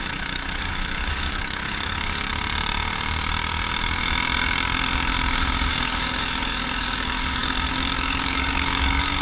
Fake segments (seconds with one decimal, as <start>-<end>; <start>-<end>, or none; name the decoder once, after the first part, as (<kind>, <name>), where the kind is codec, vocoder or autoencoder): 0.0-2.3 (codec, DAC); 5.7-9.2